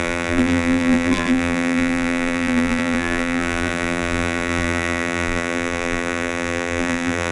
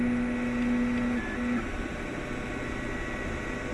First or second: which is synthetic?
first